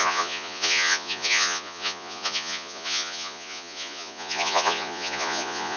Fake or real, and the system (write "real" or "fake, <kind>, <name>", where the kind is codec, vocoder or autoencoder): fake, vocoder, Vocos